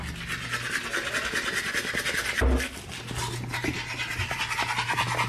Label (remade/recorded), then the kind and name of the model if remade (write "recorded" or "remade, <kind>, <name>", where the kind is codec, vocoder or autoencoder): recorded